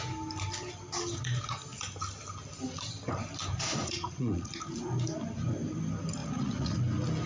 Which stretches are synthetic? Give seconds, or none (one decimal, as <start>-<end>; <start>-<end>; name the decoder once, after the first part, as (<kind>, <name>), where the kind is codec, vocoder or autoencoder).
3.8-4.5 (vocoder, Vocos); 6.2-6.8